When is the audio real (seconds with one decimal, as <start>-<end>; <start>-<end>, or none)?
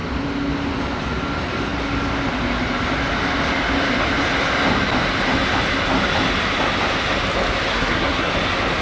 0.0-7.7; 8.3-8.8